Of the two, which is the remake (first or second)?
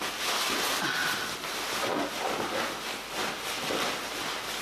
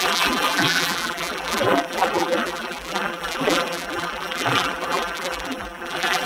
second